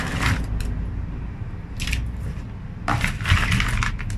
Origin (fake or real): fake